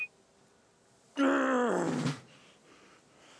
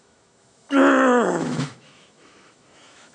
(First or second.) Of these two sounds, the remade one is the second